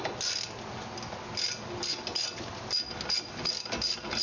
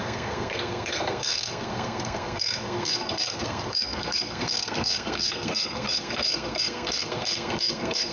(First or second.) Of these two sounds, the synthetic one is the second